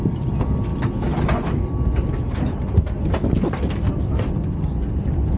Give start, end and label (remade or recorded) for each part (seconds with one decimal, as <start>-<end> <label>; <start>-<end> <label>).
0.0-5.4 recorded